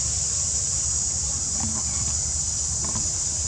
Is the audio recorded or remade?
recorded